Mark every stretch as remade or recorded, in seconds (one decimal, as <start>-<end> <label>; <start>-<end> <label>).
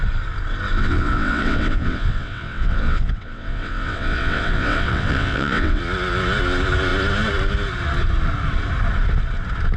0.0-0.8 recorded; 0.8-5.8 remade; 5.8-9.8 recorded